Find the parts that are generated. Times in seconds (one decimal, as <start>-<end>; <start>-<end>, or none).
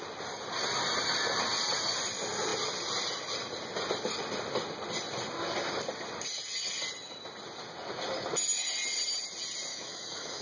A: 9.7-10.4